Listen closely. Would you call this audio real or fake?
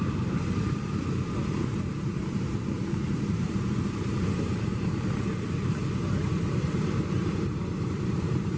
fake